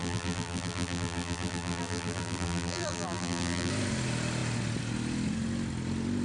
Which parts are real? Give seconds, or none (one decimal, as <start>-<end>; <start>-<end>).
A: 3.7-6.2